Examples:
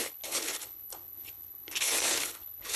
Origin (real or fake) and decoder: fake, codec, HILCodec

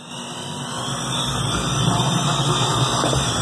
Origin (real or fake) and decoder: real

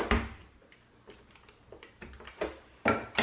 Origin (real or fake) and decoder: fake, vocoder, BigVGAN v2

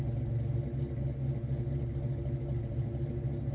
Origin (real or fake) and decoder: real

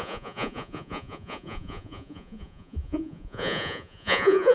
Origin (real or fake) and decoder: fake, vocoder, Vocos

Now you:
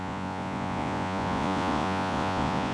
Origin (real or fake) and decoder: fake, vocoder, Vocos